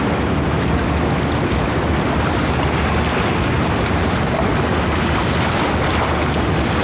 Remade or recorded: recorded